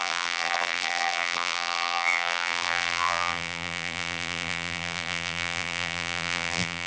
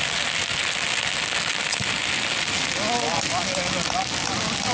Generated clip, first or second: first